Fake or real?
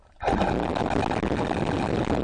real